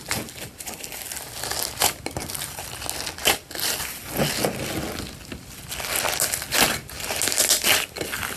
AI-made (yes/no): no